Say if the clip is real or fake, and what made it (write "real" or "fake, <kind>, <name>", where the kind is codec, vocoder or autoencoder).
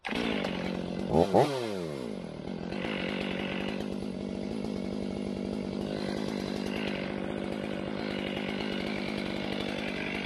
real